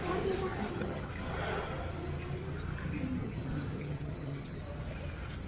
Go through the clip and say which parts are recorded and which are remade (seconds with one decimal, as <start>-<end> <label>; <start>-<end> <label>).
0.0-0.5 recorded; 0.5-1.1 remade; 1.1-3.2 recorded; 3.2-4.6 remade; 4.6-5.5 recorded